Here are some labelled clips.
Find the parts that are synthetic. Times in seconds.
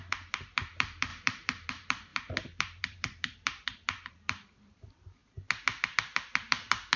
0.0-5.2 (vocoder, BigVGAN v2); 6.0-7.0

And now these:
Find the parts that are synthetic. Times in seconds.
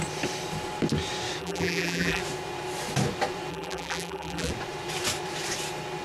1.4-2.2 (vocoder, BigVGAN v2); 3.5-4.5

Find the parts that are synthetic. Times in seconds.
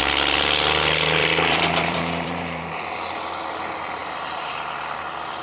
1.2-2.7 (vocoder, BigVGAN v2); 4.0-5.4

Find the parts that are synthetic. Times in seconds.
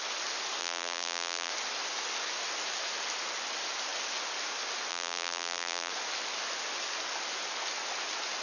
0.6-1.5 (vocoder, BigVGAN v2); 4.9-5.9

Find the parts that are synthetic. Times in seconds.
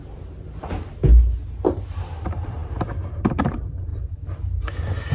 0.0-1.0 (vocoder, BigVGAN v2); 2.0-5.1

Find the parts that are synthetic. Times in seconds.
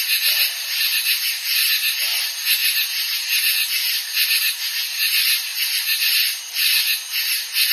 2.6-3.4 (vocoder, BigVGAN v2)